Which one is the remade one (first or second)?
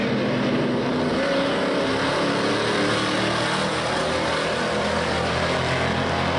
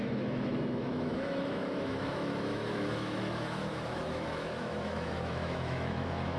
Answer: second